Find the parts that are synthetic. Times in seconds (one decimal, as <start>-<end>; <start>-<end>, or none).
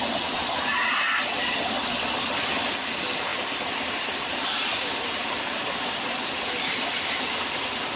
3.3-5.6